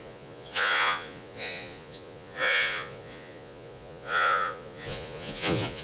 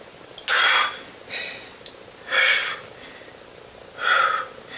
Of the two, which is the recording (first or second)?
second